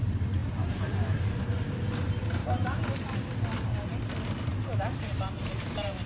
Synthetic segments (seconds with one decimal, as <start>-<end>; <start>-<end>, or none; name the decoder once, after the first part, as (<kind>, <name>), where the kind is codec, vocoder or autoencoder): 0.4-1.2 (vocoder, BigVGAN v2); 2.4-4.0; 4.5-6.1